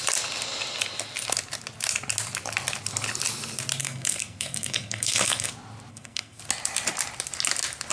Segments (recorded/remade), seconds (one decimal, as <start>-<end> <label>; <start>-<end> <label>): 0.0-3.8 recorded; 3.8-5.5 remade; 5.5-5.9 recorded; 5.9-6.4 remade; 6.4-7.9 recorded